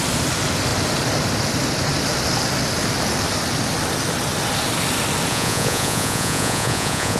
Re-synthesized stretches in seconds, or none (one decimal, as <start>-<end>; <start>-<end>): 5.3-7.2